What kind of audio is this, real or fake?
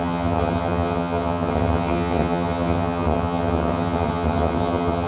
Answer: fake